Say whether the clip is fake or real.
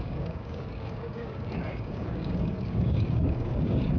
fake